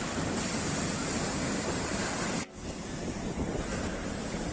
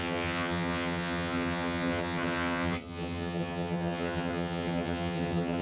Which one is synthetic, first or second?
second